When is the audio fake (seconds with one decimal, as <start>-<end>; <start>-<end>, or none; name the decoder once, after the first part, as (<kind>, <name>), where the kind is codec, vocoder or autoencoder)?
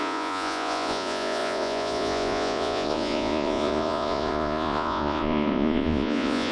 0.0-6.5 (vocoder, Vocos)